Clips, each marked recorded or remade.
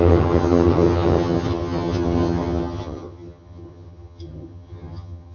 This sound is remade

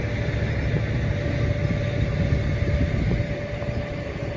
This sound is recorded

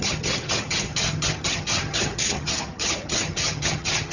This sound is remade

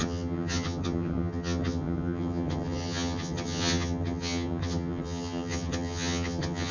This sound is remade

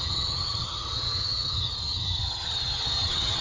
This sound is remade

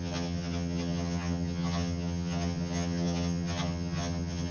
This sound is remade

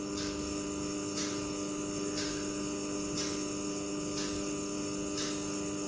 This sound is recorded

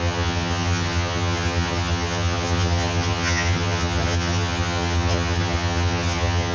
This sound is remade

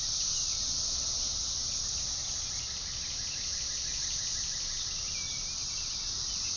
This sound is recorded